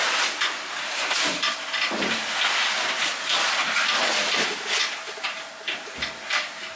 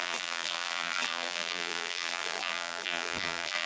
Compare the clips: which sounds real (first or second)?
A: first